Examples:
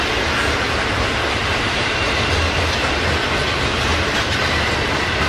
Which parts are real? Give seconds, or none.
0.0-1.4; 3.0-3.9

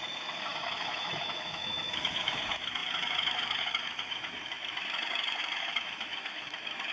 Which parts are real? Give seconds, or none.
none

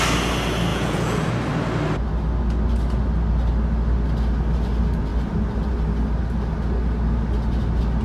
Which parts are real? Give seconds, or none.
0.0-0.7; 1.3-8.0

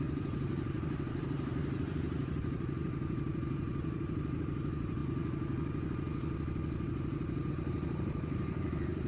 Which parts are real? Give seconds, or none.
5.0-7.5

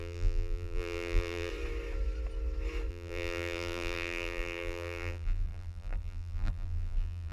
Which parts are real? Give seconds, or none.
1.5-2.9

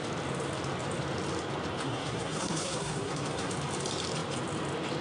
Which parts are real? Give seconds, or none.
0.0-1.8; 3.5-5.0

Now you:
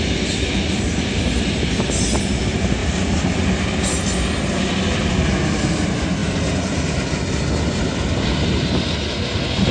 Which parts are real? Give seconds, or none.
0.0-2.8; 5.1-9.7